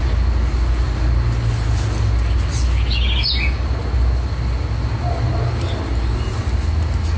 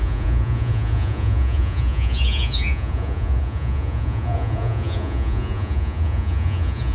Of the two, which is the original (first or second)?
first